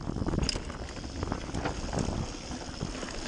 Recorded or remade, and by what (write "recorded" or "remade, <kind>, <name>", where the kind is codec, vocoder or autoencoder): recorded